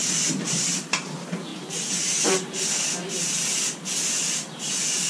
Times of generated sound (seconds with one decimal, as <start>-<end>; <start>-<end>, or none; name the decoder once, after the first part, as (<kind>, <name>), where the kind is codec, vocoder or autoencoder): 0.0-1.5 (vocoder, BigVGAN v2); 2.6-3.0